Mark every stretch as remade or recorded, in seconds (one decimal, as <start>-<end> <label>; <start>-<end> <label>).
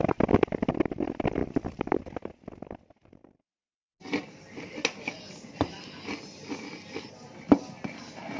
0.0-8.4 recorded